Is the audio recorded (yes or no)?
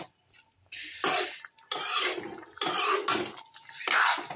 yes